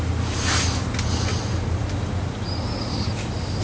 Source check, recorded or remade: recorded